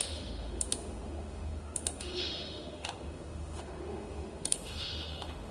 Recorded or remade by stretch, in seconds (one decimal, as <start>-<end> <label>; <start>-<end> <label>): 0.0-5.5 remade